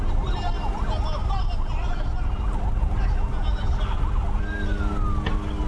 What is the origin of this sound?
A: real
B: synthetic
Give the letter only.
A